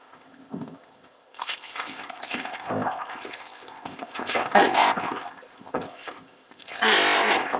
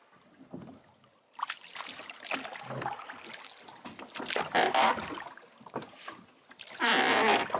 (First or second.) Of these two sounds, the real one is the second